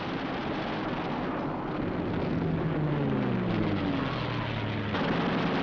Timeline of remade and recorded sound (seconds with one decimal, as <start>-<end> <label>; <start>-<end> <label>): 0.0-5.6 recorded